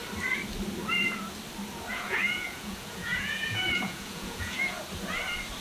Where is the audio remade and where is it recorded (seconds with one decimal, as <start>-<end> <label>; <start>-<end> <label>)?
0.0-1.9 recorded; 1.9-4.8 remade; 4.8-5.6 recorded